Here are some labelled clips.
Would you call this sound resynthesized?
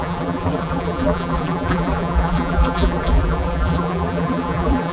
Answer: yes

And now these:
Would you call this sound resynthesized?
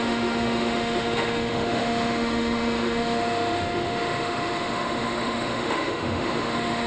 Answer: yes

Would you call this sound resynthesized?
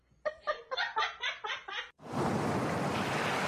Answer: no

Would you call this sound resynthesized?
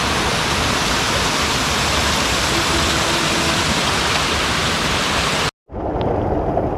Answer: no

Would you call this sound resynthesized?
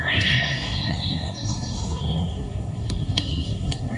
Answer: yes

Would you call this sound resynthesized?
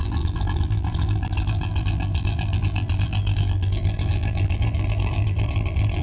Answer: yes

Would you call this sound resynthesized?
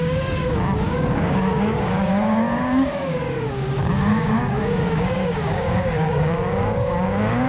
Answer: yes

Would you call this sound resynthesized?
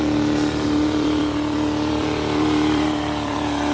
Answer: yes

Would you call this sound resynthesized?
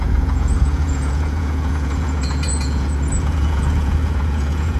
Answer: yes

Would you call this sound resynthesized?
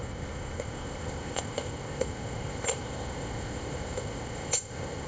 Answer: yes